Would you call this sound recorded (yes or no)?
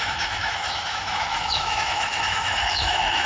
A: no